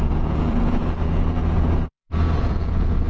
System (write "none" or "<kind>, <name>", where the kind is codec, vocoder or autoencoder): vocoder, Vocos